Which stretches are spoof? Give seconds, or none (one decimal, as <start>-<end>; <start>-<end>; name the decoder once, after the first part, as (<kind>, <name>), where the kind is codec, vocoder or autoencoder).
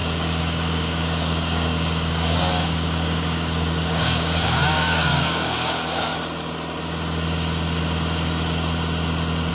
0.0-6.1 (codec, DAC)